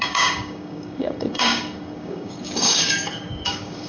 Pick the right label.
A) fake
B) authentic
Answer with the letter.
A